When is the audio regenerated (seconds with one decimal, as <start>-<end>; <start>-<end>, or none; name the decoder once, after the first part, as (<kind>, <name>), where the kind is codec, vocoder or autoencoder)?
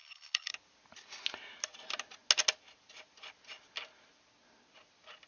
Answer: 0.0-0.5 (codec, HILCodec)